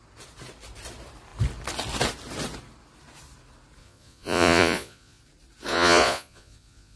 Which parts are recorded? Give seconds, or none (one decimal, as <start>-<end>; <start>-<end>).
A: 0.0-3.8; 5.2-5.7